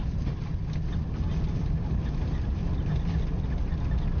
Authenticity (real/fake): real